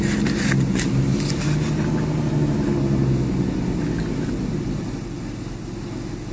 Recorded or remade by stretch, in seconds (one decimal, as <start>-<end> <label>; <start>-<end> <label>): 0.0-6.3 recorded